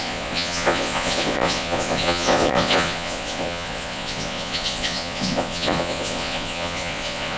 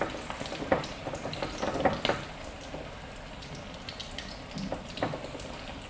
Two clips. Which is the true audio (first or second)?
second